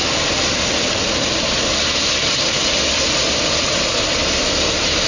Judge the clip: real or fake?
real